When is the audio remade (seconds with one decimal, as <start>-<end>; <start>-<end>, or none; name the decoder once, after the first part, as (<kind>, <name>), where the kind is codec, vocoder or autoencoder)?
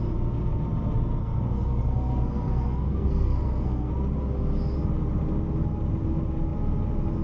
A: 1.2-3.9 (codec, SNAC)